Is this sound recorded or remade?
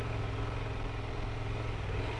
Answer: recorded